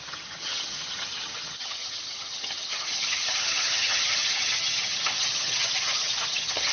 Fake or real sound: fake